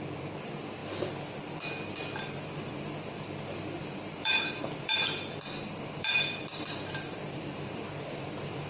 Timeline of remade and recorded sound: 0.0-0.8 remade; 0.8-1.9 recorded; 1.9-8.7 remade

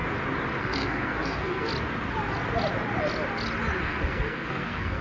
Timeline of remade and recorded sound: 0.0-0.6 recorded; 0.6-1.7 remade; 1.7-3.8 recorded; 3.8-5.0 remade